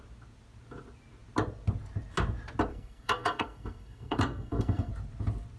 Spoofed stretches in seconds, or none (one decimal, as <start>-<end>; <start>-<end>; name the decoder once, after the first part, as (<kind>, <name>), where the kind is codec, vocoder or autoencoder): 2.7-4.9 (codec, SNAC)